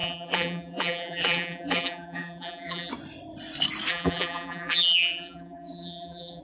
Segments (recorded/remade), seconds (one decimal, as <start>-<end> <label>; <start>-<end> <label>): 0.0-2.9 remade; 2.9-3.9 recorded; 3.9-6.4 remade